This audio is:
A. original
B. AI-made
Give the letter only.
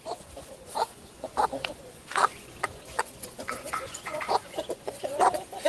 B